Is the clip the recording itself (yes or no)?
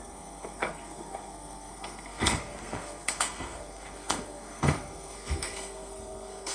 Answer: no